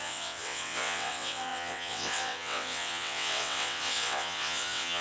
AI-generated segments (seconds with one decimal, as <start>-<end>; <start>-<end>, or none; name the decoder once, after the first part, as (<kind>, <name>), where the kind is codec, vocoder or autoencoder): 0.0-5.0 (vocoder, WaveNeXt)